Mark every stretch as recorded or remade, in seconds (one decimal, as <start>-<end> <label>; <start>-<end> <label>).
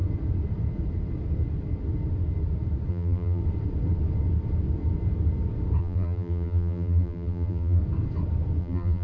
0.0-2.9 recorded; 2.9-3.4 remade; 3.4-5.8 recorded; 5.8-7.8 remade; 7.8-8.6 recorded; 8.6-9.0 remade